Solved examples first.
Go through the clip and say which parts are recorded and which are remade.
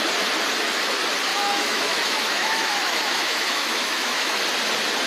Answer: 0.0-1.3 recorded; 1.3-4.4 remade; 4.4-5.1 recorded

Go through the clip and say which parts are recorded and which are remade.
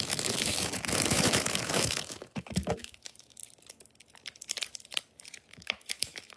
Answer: 0.0-3.4 remade; 3.4-5.5 recorded; 5.5-6.4 remade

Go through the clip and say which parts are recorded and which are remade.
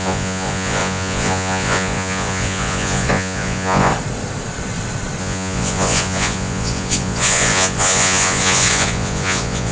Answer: 0.0-3.9 remade; 3.9-5.2 recorded; 5.2-9.7 remade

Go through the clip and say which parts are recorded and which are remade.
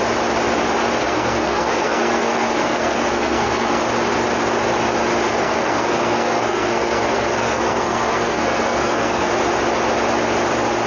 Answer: 0.0-1.0 recorded; 1.0-3.8 remade; 3.8-5.3 recorded; 5.3-9.3 remade; 9.3-10.9 recorded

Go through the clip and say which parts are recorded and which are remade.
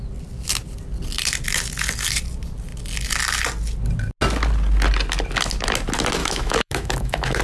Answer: 0.0-6.2 recorded; 6.2-7.4 remade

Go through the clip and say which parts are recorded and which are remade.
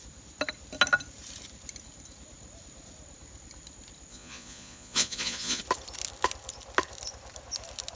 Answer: 0.0-4.1 recorded; 4.1-5.6 remade; 5.6-8.0 recorded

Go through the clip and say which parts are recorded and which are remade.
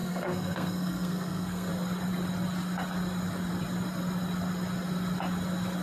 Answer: 0.0-1.7 remade; 1.7-5.8 recorded